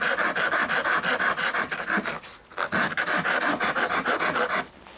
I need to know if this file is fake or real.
real